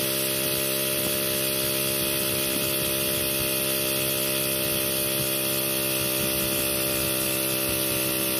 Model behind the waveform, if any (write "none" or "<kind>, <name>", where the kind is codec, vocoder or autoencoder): none